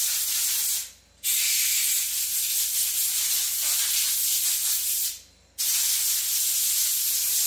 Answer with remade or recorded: recorded